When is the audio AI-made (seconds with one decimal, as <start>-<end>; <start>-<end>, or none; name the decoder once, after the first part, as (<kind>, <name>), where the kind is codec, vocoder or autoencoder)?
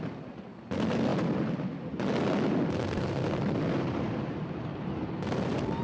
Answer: none